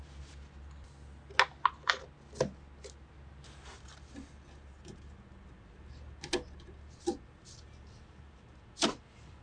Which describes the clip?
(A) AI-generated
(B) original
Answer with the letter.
B